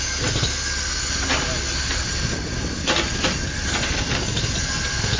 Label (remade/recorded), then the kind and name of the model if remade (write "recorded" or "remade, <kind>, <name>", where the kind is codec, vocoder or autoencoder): recorded